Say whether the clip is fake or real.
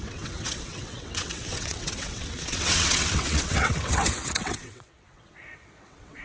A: fake